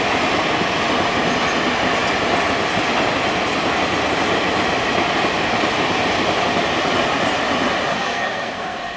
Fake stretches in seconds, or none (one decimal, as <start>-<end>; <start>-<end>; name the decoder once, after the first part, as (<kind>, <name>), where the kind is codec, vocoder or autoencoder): 7.9-9.0 (codec, SNAC)